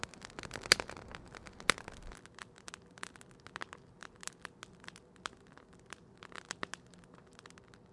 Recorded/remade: recorded